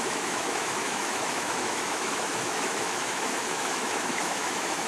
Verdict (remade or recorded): remade